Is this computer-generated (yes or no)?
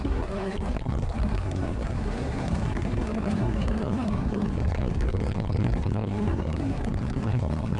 yes